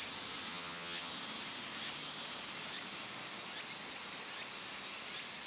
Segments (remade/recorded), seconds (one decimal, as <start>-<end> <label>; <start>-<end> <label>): 0.0-0.5 recorded; 0.5-1.1 remade; 1.1-5.5 recorded